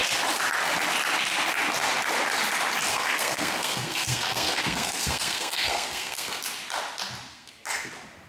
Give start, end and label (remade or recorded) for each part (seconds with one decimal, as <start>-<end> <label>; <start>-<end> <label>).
0.0-2.9 recorded; 2.9-6.4 remade; 6.4-7.3 recorded; 7.3-7.9 remade; 7.9-8.3 recorded